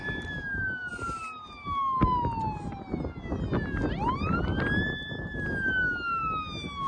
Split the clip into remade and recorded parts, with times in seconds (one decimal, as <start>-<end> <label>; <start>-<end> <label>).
0.0-6.9 recorded